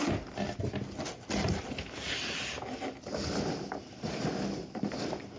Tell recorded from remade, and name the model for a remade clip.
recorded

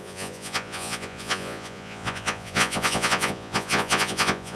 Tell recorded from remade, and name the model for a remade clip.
remade, vocoder, Vocos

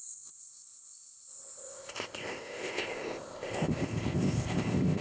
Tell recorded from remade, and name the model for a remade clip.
remade, codec, ZipCodec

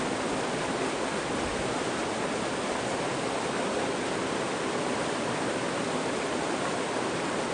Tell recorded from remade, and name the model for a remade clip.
recorded